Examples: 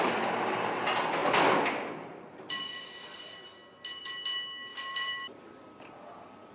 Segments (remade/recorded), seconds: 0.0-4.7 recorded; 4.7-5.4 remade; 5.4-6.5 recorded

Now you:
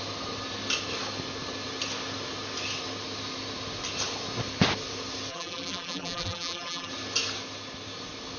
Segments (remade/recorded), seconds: 0.0-5.3 recorded; 5.3-6.9 remade; 6.9-8.4 recorded

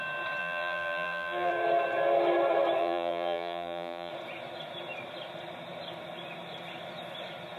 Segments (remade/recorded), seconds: 0.0-0.4 recorded; 0.4-1.5 remade; 1.5-2.8 recorded; 2.8-4.1 remade; 4.1-7.6 recorded

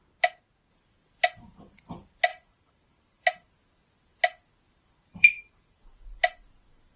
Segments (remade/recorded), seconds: 0.0-2.3 recorded; 2.3-3.5 remade; 3.5-5.1 recorded; 5.1-5.8 remade; 5.8-7.0 recorded

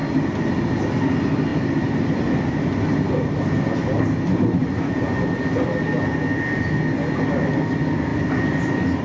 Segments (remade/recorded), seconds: 0.0-9.0 recorded

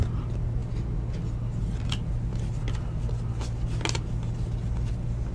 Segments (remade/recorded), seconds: 0.0-5.3 recorded